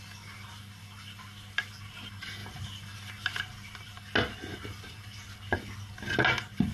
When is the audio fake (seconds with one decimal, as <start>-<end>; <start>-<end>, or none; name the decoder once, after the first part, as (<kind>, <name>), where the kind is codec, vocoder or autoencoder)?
none